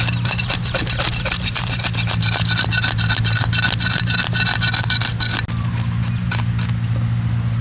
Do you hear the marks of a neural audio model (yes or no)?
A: no